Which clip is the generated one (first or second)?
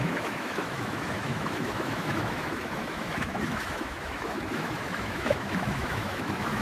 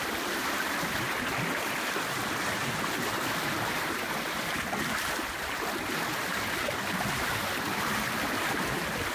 first